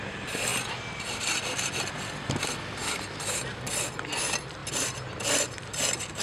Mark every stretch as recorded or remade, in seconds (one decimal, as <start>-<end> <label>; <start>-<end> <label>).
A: 0.0-2.8 recorded; 2.8-3.4 remade; 3.4-4.6 recorded; 4.6-6.2 remade